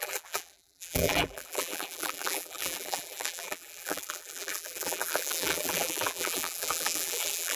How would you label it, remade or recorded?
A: remade